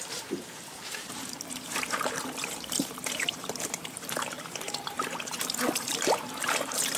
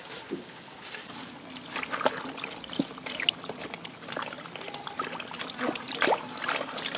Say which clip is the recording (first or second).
second